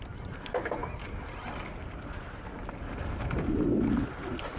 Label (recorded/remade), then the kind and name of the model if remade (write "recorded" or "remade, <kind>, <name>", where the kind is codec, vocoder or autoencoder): recorded